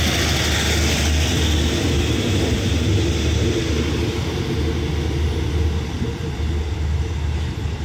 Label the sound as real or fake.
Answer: real